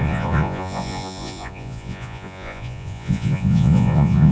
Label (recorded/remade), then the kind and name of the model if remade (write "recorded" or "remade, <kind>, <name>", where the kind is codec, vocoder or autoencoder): remade, vocoder, Vocos